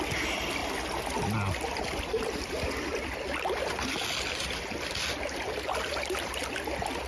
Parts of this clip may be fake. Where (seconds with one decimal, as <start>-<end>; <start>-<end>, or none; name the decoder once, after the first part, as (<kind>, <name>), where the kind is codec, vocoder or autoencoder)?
none